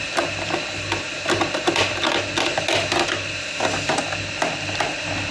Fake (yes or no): no